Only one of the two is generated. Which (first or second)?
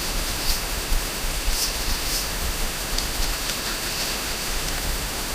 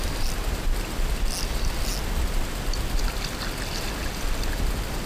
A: first